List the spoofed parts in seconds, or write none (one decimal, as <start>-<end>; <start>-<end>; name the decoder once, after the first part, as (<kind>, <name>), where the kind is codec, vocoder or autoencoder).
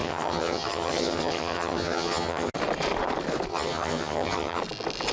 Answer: 0.0-2.5 (vocoder, HiFi-GAN); 3.5-4.6